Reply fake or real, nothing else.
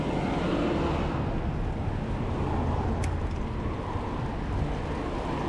real